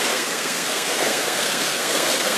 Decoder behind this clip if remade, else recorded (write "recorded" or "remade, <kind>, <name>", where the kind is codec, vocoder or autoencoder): remade, codec, SNAC